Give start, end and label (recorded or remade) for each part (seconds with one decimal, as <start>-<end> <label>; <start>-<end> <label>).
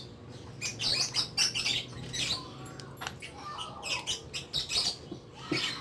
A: 0.0-5.8 recorded